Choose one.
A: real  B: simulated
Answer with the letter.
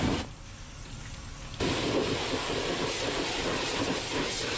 A